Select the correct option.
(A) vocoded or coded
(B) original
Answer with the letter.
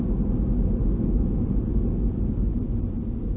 B